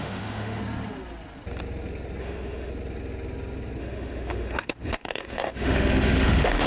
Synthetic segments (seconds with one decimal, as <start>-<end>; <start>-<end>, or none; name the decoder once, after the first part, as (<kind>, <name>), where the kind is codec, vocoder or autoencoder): 0.0-0.6 (autoencoder, DAC-VAE); 2.2-2.7; 3.8-6.7